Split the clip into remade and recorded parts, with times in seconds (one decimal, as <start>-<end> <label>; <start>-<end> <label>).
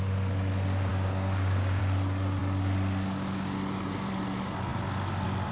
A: 0.0-0.9 recorded; 0.9-1.8 remade; 1.8-5.5 recorded